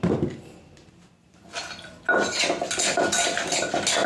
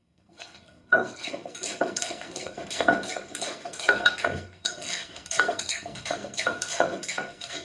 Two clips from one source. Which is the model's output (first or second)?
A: second